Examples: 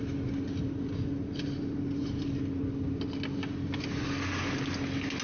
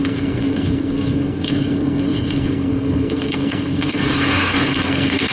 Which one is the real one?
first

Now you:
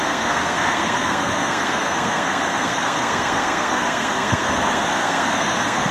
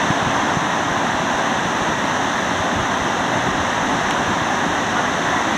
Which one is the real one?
second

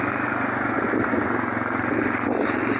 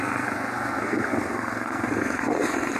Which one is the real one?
first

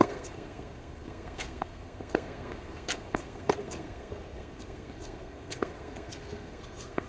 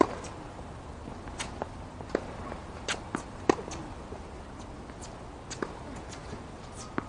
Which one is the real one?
second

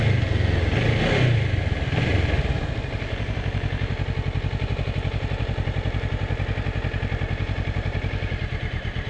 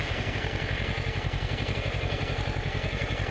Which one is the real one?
first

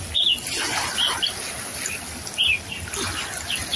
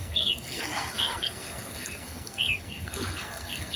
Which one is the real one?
first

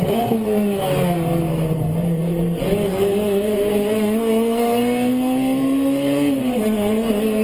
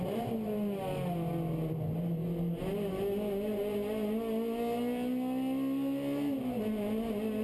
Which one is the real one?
second